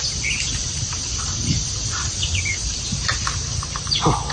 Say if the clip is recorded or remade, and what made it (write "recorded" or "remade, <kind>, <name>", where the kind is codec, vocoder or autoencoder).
recorded